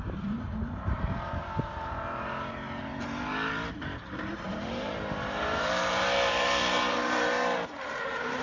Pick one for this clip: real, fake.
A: fake